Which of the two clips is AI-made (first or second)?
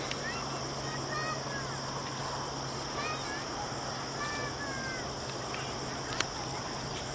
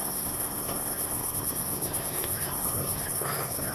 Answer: second